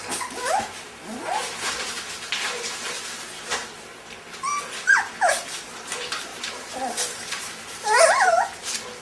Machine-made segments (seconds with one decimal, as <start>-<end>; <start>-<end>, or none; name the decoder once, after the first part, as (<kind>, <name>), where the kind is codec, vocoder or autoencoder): 1.4-2.0 (vocoder, BigVGAN v2); 6.3-8.3